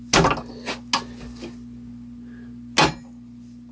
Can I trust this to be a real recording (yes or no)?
yes